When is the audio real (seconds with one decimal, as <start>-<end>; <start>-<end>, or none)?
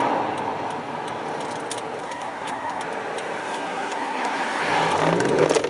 0.0-2.0; 2.8-3.4; 4.6-5.7